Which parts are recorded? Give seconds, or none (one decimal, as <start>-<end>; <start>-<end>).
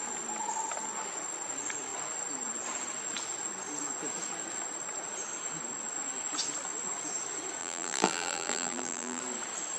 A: 0.0-7.6; 9.2-9.8